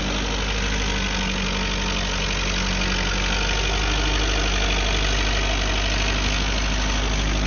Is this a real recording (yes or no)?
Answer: yes